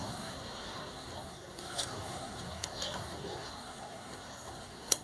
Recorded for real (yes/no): no